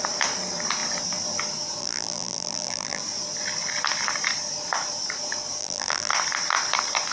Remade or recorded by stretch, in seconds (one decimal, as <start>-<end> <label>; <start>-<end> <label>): 0.0-1.8 recorded; 1.8-3.0 remade; 3.0-5.6 recorded; 5.6-6.1 remade; 6.1-7.1 recorded